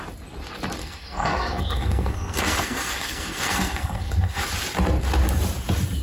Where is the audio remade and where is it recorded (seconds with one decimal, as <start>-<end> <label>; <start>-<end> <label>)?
0.0-0.8 recorded; 0.8-4.4 remade; 4.4-6.0 recorded